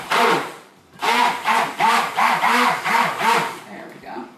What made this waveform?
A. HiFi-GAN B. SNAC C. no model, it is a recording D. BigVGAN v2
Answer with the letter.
D